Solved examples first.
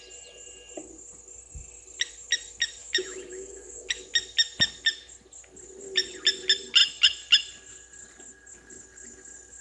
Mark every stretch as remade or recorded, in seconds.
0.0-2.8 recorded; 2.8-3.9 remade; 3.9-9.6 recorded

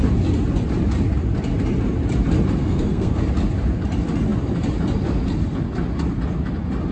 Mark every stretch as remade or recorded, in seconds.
0.0-2.6 recorded; 2.6-3.2 remade; 3.2-6.9 recorded

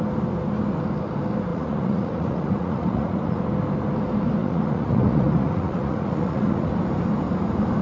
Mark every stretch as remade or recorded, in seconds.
0.0-1.5 recorded; 1.5-3.4 remade; 3.4-4.4 recorded; 4.4-6.7 remade; 6.7-7.8 recorded

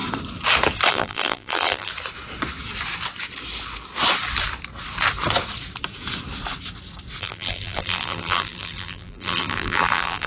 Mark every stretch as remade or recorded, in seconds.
0.0-0.9 recorded; 0.9-1.9 remade; 1.9-7.2 recorded; 7.2-10.3 remade